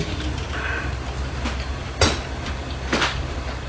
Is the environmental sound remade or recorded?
recorded